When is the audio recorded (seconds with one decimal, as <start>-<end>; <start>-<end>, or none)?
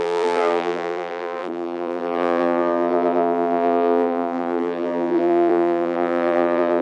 none